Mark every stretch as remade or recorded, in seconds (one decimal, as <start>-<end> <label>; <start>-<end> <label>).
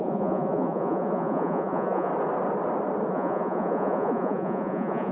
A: 0.0-2.1 remade; 2.1-3.1 recorded; 3.1-5.1 remade